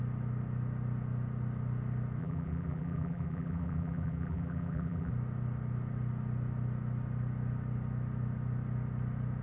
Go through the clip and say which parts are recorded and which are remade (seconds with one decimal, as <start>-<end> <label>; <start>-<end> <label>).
0.0-2.2 recorded; 2.2-5.1 remade; 5.1-9.4 recorded